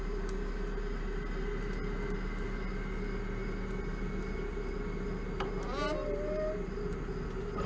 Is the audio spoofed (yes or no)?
no